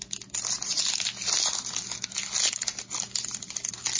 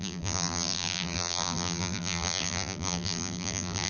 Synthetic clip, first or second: second